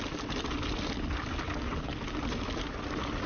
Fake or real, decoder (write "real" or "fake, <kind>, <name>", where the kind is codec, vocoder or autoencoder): real